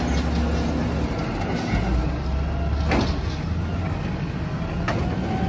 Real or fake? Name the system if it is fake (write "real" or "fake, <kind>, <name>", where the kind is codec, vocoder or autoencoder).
real